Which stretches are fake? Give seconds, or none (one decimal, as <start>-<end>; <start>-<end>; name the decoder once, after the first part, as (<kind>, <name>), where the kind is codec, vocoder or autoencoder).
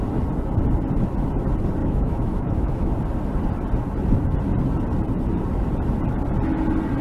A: 1.8-2.9 (autoencoder, DAC-VAE)